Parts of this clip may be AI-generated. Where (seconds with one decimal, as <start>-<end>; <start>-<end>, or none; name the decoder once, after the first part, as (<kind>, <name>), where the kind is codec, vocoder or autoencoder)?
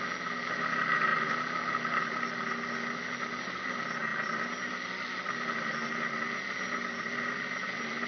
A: none